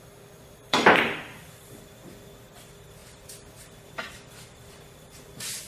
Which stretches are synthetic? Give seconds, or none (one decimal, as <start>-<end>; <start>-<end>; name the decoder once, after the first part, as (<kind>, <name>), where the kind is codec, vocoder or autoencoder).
0.6-1.2 (vocoder, BigVGAN v2); 3.0-4.1